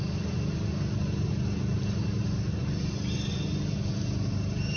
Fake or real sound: real